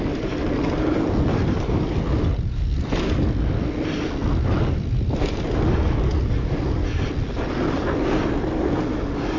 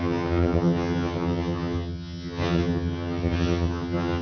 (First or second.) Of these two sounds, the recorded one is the first